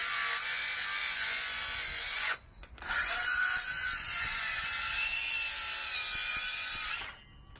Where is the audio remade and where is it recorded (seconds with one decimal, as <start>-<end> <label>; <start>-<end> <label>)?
0.0-0.6 remade; 0.6-1.0 recorded; 1.0-5.3 remade; 5.3-5.8 recorded; 5.8-6.9 remade; 6.9-7.6 recorded